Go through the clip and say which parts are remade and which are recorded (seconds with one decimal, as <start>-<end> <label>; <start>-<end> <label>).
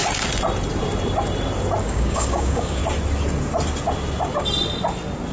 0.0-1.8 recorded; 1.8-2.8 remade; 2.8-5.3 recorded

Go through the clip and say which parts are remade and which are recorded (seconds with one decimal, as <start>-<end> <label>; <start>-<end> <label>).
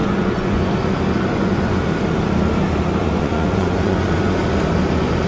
0.0-0.7 remade; 0.7-1.3 recorded; 1.3-1.8 remade; 1.8-3.0 recorded; 3.0-4.4 remade; 4.4-5.3 recorded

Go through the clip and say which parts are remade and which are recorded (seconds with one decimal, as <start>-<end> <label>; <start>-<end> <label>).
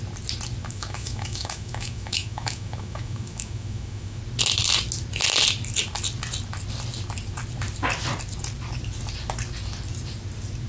0.0-0.6 recorded; 0.6-4.2 remade; 4.2-10.7 recorded